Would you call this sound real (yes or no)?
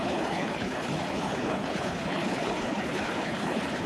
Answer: no